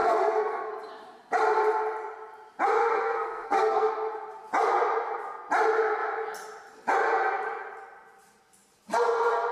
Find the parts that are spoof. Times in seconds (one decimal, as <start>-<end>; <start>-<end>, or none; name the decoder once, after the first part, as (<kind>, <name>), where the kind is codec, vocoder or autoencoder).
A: 0.0-0.7 (codec, SNAC); 2.8-3.9